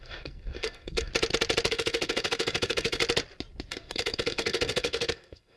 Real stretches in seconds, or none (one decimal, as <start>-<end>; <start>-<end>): 1.1-1.7; 3.0-3.7